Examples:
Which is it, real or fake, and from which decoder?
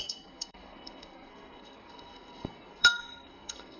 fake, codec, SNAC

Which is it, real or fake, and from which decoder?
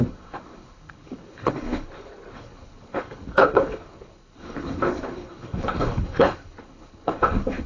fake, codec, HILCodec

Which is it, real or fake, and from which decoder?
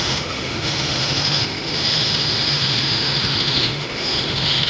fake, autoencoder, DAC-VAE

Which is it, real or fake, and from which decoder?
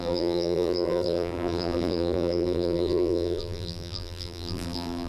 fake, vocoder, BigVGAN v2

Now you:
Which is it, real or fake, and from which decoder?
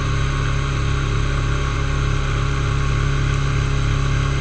real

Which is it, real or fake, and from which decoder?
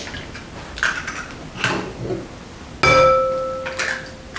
real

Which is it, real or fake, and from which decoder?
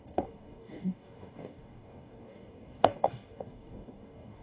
fake, codec, DAC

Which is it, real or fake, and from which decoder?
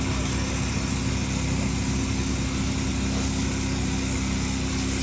real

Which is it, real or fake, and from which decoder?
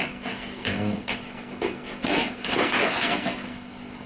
fake, codec, SNAC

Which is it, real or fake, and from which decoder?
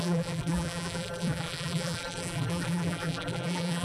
fake, vocoder, BigVGAN v2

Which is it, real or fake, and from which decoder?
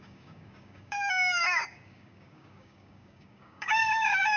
fake, codec, DAC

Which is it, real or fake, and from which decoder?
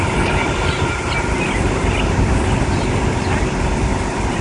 real